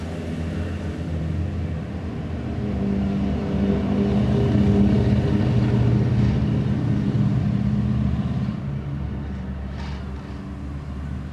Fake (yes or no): no